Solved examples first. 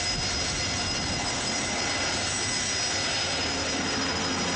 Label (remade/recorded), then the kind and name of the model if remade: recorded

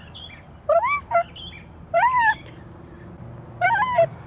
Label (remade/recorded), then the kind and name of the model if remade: recorded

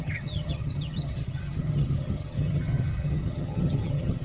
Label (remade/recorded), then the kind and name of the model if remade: remade, vocoder, HiFi-GAN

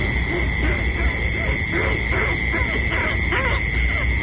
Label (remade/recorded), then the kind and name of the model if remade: recorded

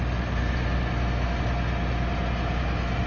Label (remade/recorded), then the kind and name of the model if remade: recorded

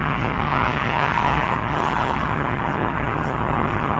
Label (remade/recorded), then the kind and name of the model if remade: remade, vocoder, HiFi-GAN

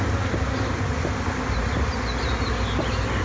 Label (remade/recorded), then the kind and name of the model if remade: recorded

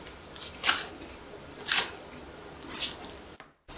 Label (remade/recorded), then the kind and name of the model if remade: recorded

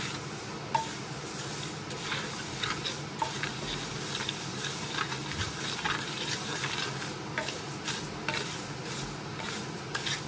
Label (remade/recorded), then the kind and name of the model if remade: recorded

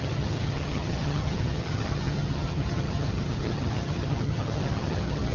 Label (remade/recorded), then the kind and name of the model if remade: remade, vocoder, HiFi-GAN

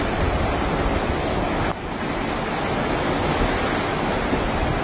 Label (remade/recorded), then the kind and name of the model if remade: recorded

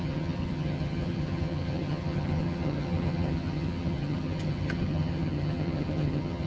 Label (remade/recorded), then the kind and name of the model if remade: remade, vocoder, HiFi-GAN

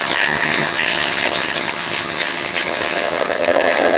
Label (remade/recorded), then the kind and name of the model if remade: remade, vocoder, HiFi-GAN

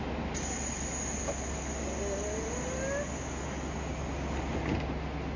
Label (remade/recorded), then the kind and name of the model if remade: recorded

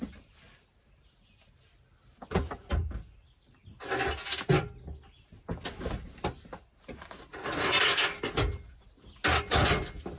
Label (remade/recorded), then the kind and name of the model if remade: recorded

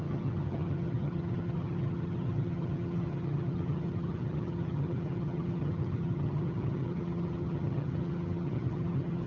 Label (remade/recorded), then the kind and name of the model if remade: remade, vocoder, HiFi-GAN